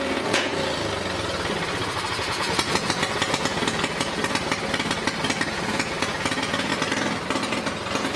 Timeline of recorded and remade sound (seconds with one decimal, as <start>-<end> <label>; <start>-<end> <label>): 0.0-0.5 remade; 0.5-2.1 recorded; 2.1-4.2 remade; 4.2-5.5 recorded; 5.5-6.7 remade; 6.7-7.4 recorded; 7.4-8.2 remade